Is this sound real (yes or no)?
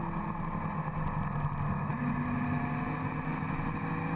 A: yes